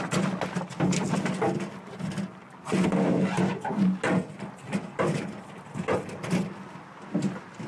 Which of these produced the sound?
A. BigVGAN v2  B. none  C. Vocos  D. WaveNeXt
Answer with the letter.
B